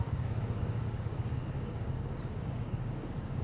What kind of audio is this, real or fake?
fake